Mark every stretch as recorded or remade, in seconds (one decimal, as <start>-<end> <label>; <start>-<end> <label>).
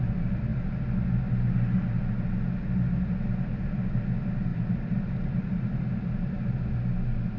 0.0-4.5 recorded; 4.5-6.5 remade; 6.5-7.4 recorded